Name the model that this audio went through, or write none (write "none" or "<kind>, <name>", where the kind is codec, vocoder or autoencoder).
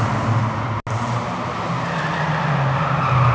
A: none